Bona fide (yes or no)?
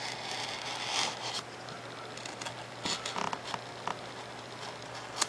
yes